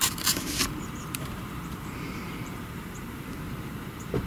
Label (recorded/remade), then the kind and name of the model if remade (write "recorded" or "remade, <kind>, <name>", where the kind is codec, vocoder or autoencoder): remade, vocoder, BigVGAN v2